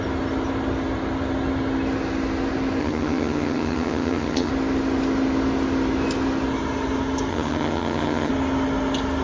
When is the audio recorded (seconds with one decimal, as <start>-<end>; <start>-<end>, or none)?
0.0-2.8; 4.5-7.3; 8.3-9.2